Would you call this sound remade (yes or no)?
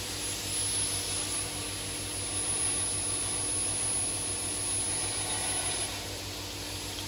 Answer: no